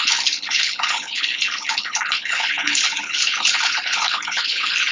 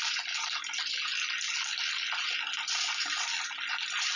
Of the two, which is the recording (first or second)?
second